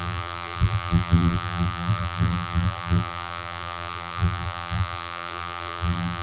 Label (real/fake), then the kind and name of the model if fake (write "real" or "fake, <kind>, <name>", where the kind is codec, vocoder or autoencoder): fake, vocoder, BigVGAN v2